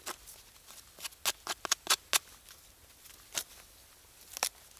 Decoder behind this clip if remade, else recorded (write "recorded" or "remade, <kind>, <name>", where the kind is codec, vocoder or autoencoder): recorded